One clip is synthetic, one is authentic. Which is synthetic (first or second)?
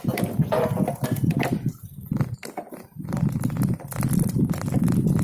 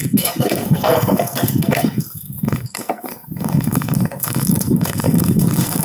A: second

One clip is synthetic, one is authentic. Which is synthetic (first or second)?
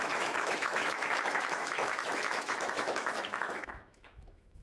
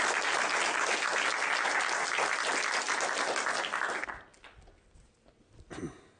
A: first